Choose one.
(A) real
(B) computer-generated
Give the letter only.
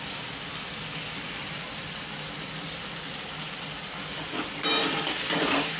B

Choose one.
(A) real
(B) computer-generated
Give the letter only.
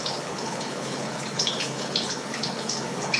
B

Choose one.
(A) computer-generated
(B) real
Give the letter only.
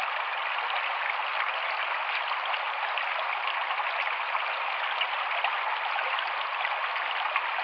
B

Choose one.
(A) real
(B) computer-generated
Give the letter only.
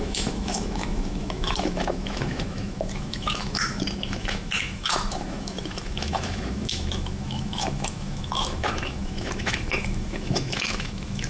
B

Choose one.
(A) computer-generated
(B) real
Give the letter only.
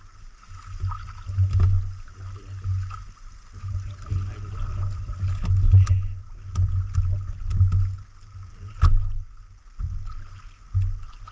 B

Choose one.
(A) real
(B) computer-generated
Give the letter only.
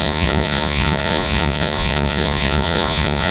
B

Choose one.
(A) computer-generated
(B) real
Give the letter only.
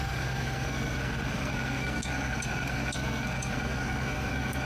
A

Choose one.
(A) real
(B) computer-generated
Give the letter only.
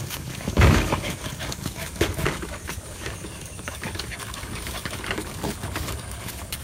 B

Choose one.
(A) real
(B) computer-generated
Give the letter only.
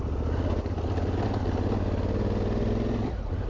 A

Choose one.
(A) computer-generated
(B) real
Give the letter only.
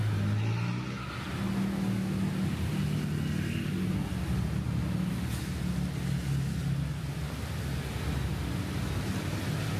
B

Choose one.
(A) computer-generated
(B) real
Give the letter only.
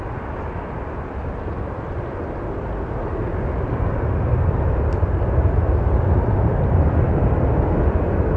B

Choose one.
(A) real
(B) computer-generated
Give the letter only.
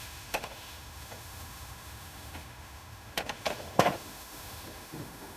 B